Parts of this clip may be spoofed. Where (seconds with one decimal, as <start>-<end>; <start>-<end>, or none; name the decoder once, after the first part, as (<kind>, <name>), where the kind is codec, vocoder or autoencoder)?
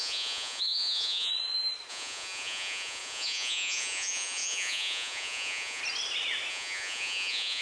0.0-1.3 (vocoder, Vocos); 1.9-5.8; 6.5-7.6